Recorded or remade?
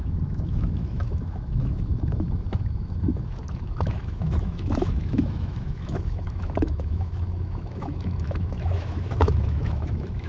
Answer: remade